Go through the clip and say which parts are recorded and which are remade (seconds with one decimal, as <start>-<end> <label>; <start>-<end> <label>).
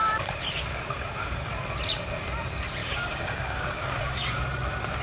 0.0-1.5 remade; 1.5-2.8 recorded; 2.8-4.4 remade; 4.4-5.0 recorded